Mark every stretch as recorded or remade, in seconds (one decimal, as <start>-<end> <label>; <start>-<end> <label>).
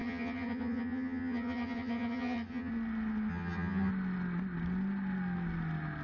0.0-2.7 remade; 2.7-3.3 recorded; 3.3-3.9 remade; 3.9-6.0 recorded